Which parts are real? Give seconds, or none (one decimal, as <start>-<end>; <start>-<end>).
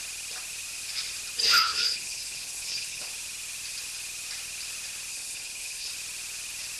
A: 0.0-1.4; 3.1-5.1; 5.9-6.8